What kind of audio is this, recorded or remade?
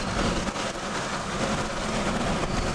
recorded